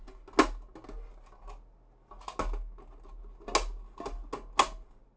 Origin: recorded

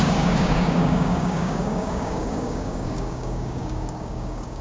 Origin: remade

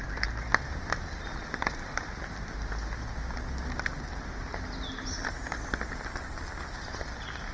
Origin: recorded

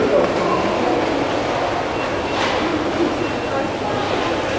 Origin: recorded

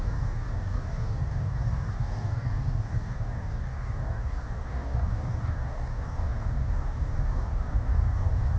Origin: remade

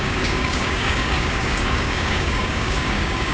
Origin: remade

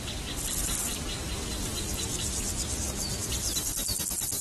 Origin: recorded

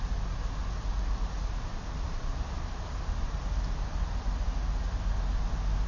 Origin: recorded